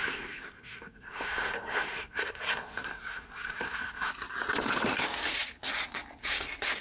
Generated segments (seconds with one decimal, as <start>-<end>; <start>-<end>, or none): 0.0-4.1